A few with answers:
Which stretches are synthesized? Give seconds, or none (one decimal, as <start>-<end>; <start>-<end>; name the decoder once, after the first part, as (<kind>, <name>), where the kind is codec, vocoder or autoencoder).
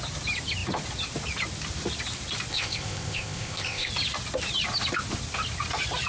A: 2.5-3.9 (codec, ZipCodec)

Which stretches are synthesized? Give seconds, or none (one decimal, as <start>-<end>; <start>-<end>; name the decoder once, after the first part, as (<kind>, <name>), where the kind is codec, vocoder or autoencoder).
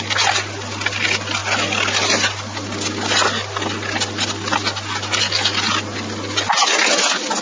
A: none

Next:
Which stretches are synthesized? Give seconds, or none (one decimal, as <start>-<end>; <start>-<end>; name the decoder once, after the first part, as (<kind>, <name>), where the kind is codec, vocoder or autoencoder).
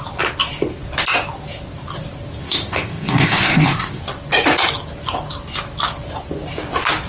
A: 2.4-4.0 (codec, ZipCodec)